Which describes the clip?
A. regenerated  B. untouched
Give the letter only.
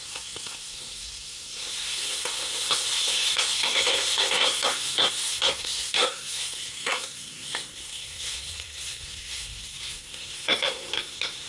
A